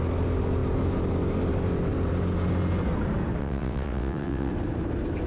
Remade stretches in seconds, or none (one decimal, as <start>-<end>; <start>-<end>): 3.4-4.5